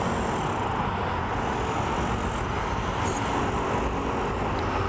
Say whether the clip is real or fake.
real